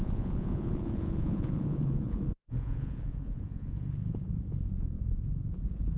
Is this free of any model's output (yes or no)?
no